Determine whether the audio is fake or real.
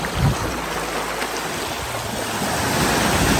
real